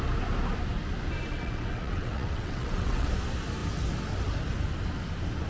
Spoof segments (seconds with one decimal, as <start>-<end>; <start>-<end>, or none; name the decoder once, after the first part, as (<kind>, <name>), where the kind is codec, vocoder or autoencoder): 1.3-3.1 (vocoder, WaveNeXt)